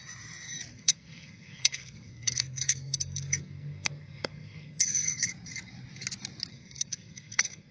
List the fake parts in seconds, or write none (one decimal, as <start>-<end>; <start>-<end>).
0.7-5.3; 6.5-7.7